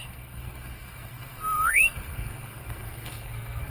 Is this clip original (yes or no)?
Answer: no